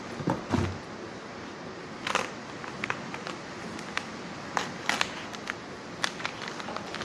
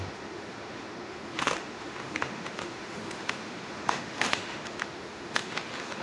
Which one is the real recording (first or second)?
first